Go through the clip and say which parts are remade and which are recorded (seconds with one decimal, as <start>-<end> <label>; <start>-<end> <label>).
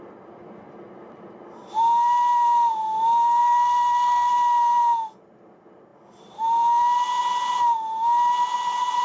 0.0-3.4 recorded; 3.4-4.3 remade; 4.3-9.0 recorded